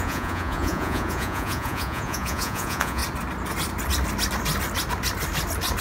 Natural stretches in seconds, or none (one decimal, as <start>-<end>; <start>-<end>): 3.0-5.8